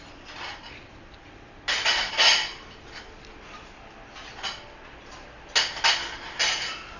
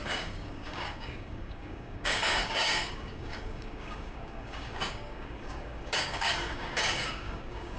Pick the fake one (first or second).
second